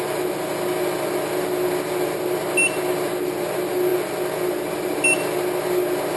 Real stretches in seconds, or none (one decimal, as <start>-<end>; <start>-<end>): 0.0-6.2